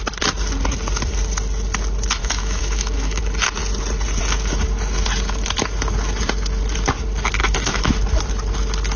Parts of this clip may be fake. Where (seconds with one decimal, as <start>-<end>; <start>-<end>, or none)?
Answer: 2.2-3.2; 7.4-7.9